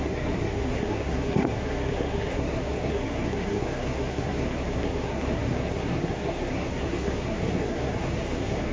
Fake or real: fake